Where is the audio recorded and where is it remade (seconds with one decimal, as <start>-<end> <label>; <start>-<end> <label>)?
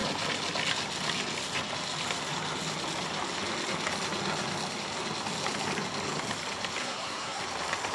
0.0-6.8 recorded; 6.8-7.4 remade; 7.4-7.9 recorded